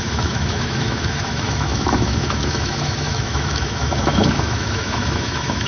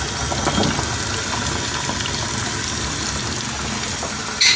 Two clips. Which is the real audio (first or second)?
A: second